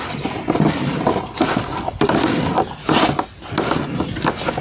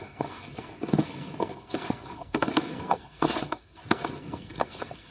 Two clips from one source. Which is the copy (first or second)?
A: second